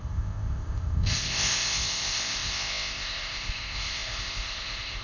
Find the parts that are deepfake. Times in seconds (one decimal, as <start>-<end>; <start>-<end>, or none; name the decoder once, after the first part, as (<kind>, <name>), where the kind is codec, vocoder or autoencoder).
0.0-5.0 (codec, ZipCodec)